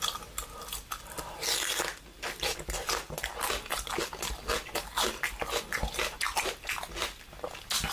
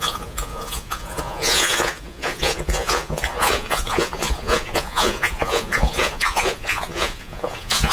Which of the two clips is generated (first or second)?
second